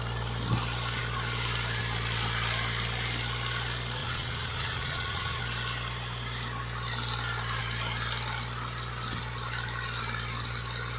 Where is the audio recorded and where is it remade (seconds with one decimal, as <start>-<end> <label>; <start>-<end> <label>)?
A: 0.0-4.0 recorded; 4.0-5.4 remade; 5.4-11.0 recorded